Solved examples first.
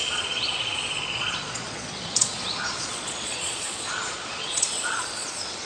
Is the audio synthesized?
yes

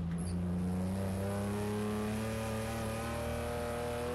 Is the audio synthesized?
no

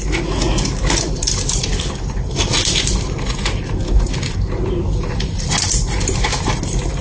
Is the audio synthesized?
no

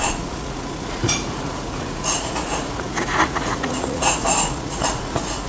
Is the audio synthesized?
yes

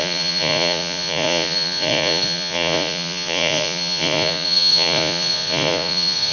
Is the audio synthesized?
yes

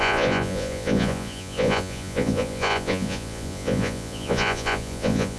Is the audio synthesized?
yes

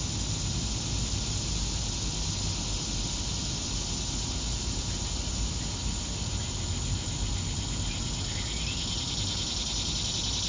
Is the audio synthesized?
no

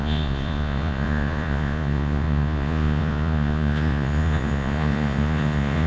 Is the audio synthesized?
yes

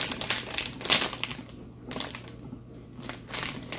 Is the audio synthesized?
no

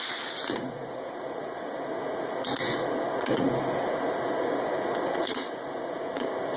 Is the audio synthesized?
yes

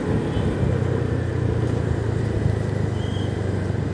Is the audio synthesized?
no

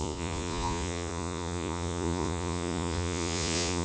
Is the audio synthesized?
yes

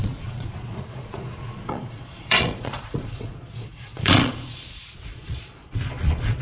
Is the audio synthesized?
yes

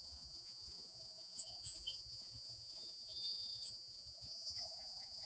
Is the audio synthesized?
yes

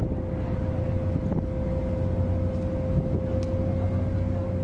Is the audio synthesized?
no